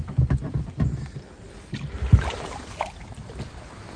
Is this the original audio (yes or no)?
yes